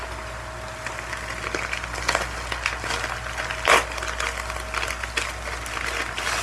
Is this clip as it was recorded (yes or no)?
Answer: yes